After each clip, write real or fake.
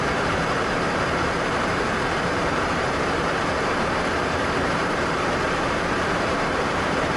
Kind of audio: fake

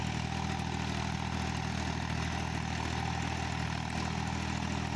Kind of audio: real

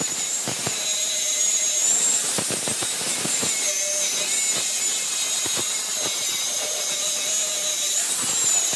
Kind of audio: fake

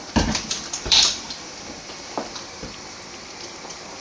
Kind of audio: fake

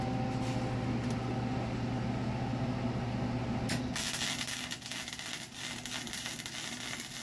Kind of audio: real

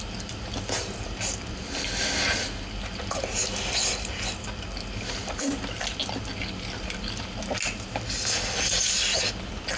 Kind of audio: real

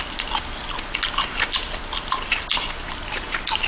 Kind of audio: real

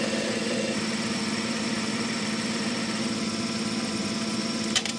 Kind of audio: fake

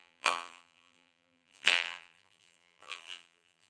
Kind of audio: fake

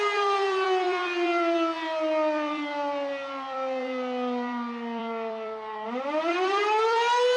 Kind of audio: fake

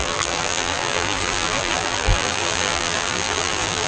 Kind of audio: fake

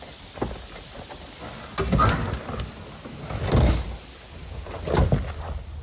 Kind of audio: real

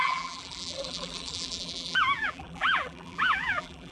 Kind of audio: fake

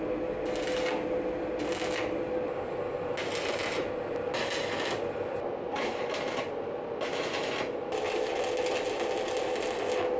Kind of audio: real